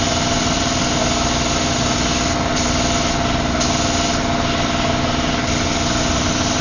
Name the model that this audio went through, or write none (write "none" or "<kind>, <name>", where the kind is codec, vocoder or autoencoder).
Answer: none